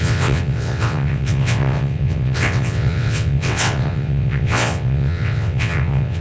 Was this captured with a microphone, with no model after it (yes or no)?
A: no